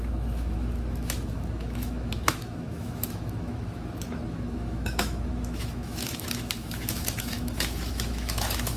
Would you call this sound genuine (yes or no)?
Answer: no